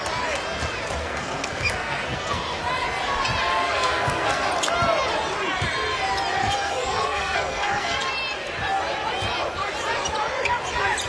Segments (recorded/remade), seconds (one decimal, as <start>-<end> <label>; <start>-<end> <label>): 0.0-1.0 recorded; 1.0-2.6 remade; 2.6-3.5 recorded; 3.5-4.5 remade; 4.5-6.4 recorded; 6.4-8.1 remade; 8.1-11.1 recorded